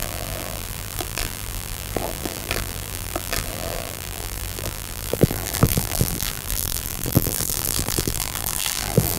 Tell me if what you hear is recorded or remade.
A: remade